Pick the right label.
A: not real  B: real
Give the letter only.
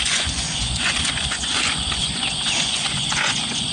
A